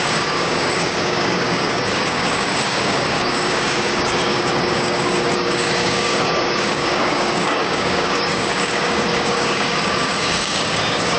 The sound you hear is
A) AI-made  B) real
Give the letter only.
A